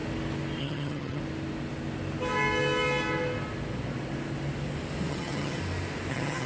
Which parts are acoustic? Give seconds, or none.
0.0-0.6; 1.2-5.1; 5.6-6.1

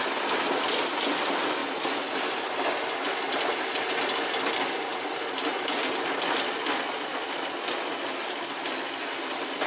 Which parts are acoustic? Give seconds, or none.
0.0-9.7

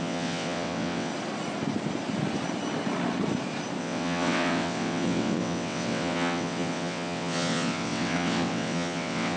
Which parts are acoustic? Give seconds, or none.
1.1-3.8

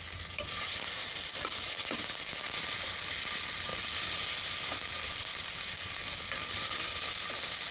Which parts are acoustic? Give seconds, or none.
0.0-7.7

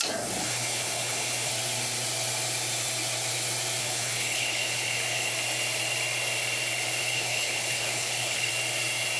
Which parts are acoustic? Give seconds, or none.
0.0-0.4; 1.5-3.8; 5.3-7.0; 8.5-9.2